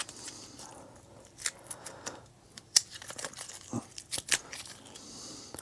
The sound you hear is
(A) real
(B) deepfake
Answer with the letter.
B